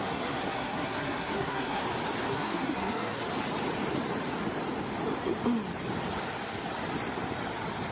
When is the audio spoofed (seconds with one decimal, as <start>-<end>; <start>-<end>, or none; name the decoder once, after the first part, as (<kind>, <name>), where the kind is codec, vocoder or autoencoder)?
0.0-1.8 (codec, SNAC); 2.3-3.2

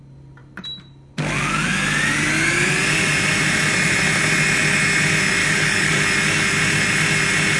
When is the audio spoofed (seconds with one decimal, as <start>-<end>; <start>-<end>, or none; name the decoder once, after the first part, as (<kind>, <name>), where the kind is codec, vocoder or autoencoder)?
5.4-6.0 (codec, DAC)

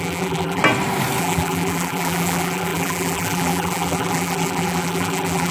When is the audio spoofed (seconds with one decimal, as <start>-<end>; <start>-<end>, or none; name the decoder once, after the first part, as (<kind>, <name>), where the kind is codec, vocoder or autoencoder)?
0.0-0.6 (vocoder, BigVGAN v2); 1.2-5.5